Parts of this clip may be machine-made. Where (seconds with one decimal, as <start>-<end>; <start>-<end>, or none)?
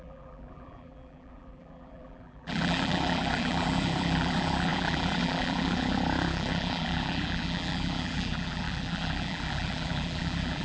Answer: 0.0-10.6